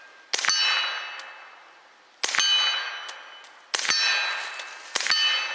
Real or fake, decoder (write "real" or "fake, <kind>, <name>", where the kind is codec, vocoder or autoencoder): real